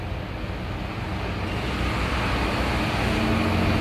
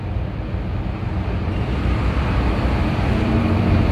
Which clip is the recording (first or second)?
first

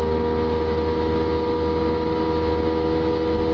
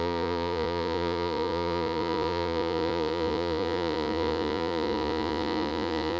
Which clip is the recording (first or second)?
first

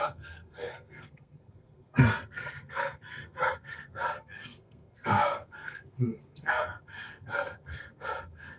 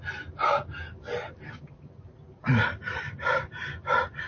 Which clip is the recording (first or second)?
second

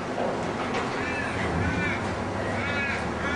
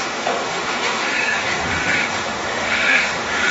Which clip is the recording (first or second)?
first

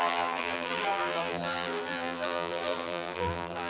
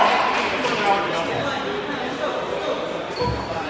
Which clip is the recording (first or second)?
second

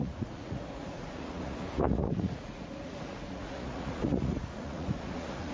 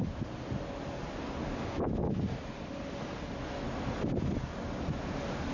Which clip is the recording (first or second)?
second